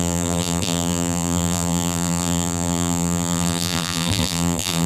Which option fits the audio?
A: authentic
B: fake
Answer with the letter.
B